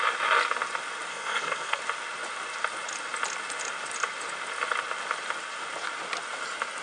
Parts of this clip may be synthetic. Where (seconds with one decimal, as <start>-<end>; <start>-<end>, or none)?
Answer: 1.1-1.8